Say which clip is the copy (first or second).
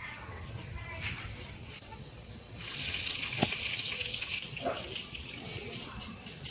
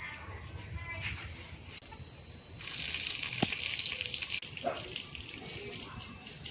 first